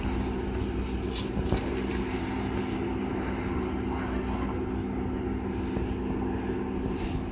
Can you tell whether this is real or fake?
real